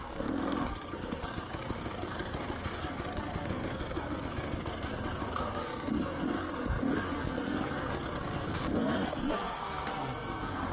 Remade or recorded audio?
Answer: remade